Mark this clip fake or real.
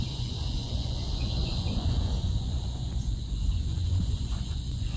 fake